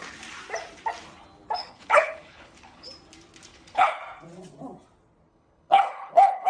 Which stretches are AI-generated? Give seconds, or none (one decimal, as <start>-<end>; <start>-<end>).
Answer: 1.6-2.9; 3.5-4.0; 5.3-6.5